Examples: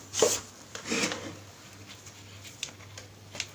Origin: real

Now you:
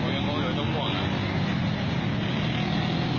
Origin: real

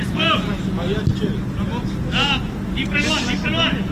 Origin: real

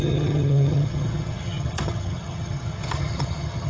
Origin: fake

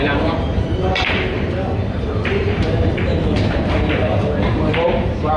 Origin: fake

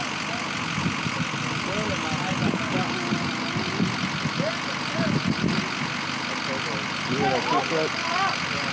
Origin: real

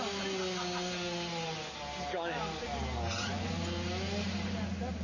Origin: real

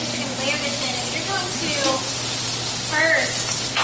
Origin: real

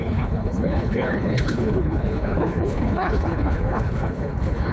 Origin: fake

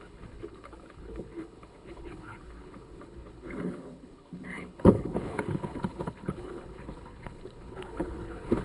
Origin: fake